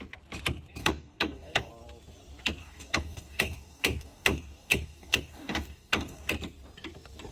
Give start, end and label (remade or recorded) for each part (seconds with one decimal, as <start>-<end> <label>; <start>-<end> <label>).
0.0-0.8 recorded; 0.8-1.7 remade; 1.7-2.6 recorded; 2.6-6.3 remade; 6.3-7.3 recorded